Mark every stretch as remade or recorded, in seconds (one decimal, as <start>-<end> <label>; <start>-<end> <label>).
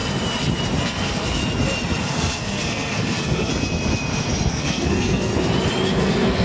0.0-0.8 recorded; 0.8-1.4 remade; 1.4-2.0 recorded; 2.0-3.5 remade; 3.5-4.5 recorded; 4.5-5.3 remade; 5.3-5.9 recorded; 5.9-6.4 remade